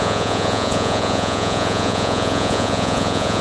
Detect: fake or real fake